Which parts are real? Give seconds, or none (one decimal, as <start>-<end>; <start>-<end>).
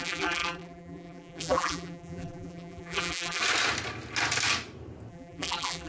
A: 3.4-5.1